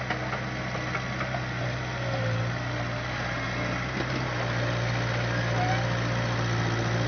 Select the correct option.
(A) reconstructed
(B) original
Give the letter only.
B